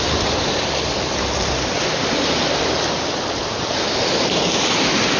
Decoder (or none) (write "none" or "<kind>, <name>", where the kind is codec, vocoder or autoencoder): none